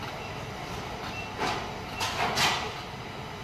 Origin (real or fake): real